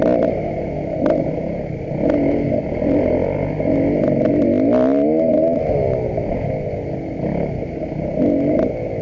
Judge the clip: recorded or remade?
recorded